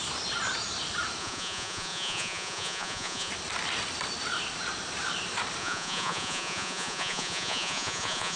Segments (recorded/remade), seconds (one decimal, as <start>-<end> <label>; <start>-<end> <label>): 0.0-1.2 recorded; 1.2-3.3 remade; 3.3-5.6 recorded; 5.6-8.4 remade